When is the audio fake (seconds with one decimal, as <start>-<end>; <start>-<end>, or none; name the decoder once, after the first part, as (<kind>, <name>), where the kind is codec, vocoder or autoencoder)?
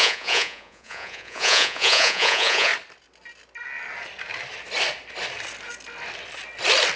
0.0-2.7 (vocoder, Vocos)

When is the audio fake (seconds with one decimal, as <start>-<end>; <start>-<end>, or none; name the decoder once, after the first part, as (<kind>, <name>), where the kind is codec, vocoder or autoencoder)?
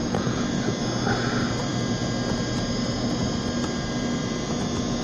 0.0-0.8 (vocoder, Vocos)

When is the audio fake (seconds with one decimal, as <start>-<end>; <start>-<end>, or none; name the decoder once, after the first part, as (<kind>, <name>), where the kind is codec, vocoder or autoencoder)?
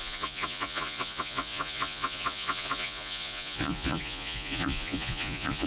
0.0-5.7 (vocoder, Vocos)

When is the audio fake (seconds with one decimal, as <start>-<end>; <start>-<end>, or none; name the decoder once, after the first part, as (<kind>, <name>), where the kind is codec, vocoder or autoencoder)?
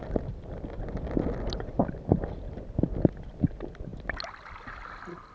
none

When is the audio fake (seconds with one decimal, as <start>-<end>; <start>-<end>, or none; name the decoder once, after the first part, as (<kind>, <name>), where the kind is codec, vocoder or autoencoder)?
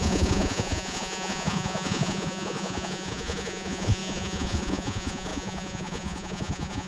0.0-6.9 (vocoder, Vocos)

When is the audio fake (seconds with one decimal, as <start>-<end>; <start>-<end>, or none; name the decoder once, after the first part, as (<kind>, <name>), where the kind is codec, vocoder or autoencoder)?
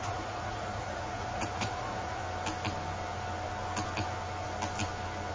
0.0-2.2 (vocoder, Vocos)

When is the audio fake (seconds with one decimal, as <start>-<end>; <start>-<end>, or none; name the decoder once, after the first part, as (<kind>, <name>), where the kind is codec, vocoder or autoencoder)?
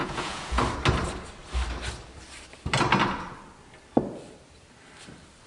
0.0-0.6 (vocoder, Vocos)